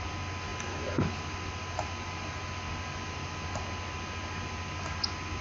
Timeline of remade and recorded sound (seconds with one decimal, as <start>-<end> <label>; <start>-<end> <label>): 0.0-5.4 recorded